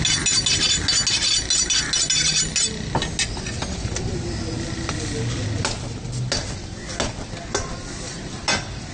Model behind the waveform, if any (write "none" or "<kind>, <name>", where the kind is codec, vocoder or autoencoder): none